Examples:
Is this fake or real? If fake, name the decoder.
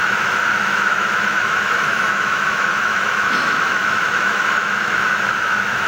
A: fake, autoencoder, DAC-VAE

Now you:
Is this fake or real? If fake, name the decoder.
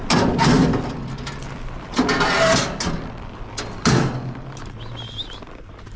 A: real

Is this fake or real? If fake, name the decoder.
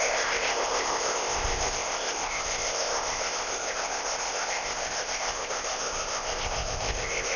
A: fake, codec, ZipCodec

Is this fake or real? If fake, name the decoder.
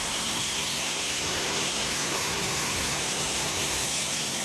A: fake, codec, SNAC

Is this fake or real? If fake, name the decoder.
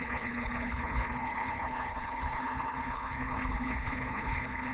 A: fake, codec, HILCodec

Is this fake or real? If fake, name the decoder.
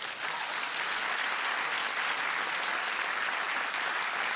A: real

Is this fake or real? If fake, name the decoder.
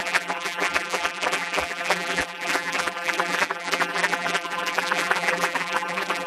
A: fake, vocoder, BigVGAN v2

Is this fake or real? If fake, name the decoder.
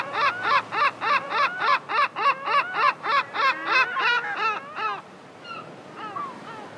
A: real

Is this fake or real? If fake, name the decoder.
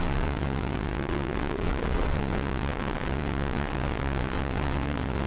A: fake, vocoder, WaveNeXt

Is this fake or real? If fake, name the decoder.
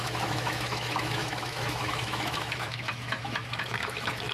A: fake, autoencoder, DAC-VAE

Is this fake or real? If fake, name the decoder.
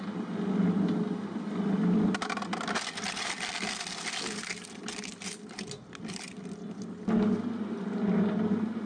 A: real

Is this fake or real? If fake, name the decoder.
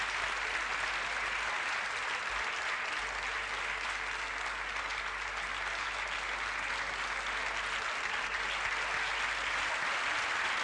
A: real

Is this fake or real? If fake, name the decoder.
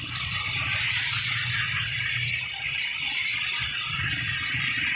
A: fake, vocoder, BigVGAN v2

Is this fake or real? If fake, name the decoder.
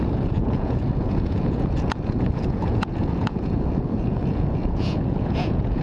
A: fake, vocoder, Vocos